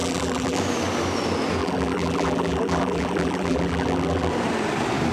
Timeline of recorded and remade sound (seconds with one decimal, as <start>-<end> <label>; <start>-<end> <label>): 0.0-0.6 remade; 0.6-1.6 recorded; 1.6-4.3 remade; 4.3-5.1 recorded